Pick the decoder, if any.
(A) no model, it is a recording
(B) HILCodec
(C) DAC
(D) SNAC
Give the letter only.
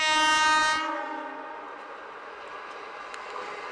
A